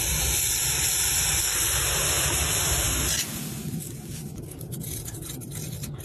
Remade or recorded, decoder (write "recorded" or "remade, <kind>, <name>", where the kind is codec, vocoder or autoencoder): recorded